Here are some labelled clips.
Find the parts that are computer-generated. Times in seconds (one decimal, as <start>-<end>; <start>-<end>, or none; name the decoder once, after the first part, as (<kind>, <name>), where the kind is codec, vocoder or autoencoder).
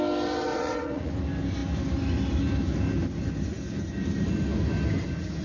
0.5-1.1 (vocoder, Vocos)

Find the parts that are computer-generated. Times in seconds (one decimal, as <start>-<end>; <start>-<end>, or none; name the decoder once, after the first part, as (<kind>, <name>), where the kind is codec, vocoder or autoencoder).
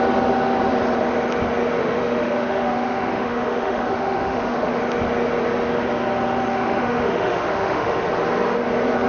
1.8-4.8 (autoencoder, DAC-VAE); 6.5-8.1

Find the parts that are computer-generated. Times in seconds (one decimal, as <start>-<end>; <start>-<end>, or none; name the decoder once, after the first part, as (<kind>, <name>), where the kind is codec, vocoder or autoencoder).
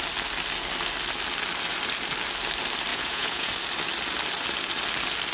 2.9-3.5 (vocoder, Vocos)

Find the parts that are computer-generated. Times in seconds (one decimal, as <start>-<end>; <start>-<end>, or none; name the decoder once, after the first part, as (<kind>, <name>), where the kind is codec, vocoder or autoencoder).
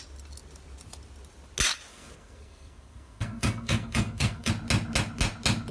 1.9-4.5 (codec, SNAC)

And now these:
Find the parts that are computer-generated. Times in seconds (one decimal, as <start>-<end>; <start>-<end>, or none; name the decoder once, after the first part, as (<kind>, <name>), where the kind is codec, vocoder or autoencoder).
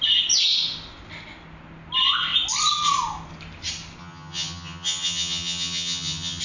4.0-6.4 (vocoder, HiFi-GAN)